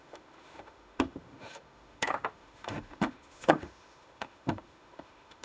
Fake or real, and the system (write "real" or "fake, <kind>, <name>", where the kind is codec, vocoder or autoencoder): fake, autoencoder, DAC-VAE